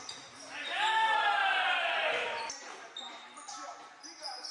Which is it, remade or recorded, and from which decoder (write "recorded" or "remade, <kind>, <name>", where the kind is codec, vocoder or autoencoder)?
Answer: remade, vocoder, BigVGAN v2